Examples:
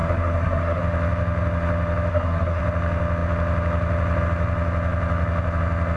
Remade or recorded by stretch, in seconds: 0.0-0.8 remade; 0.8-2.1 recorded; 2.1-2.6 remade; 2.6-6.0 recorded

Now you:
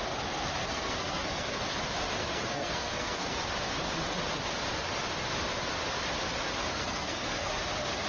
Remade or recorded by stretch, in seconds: 0.0-0.6 recorded; 0.6-1.6 remade; 1.6-2.2 recorded; 2.2-3.5 remade; 3.5-6.7 recorded; 6.7-7.5 remade; 7.5-8.1 recorded

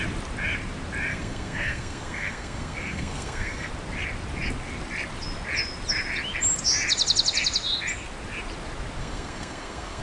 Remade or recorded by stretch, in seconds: 0.0-1.1 recorded; 1.1-3.7 remade; 3.7-9.0 recorded; 9.0-10.0 remade

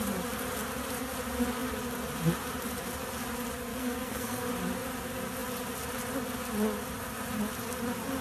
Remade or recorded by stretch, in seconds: 0.0-3.7 recorded; 3.7-4.5 remade; 4.5-8.2 recorded

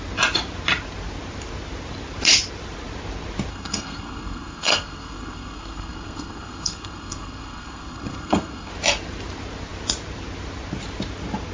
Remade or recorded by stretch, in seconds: 0.0-3.5 recorded; 3.5-8.7 remade; 8.7-11.5 recorded

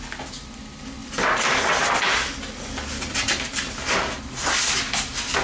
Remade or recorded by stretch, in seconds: 0.0-5.4 recorded

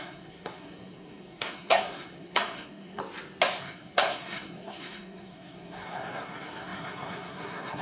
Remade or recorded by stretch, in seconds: 0.0-3.0 remade; 3.0-3.6 recorded; 3.6-7.8 remade

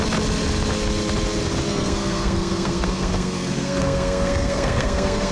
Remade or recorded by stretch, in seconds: 0.0-1.7 recorded; 1.7-5.3 remade